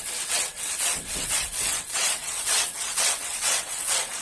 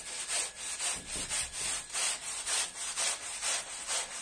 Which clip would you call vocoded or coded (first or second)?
first